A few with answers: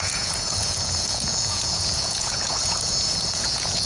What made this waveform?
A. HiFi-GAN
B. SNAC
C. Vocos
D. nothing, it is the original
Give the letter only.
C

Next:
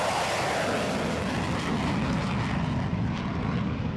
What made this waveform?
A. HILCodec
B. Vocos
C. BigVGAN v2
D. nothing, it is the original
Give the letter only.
D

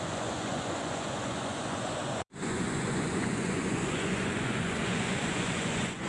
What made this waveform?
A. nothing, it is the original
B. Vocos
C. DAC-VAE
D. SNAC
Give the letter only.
B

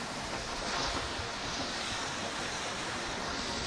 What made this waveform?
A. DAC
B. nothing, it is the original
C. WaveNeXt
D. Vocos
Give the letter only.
B